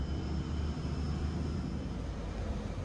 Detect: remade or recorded recorded